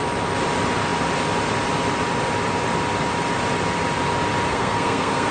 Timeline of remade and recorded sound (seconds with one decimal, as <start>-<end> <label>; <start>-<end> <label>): 0.0-4.5 recorded; 4.5-5.3 remade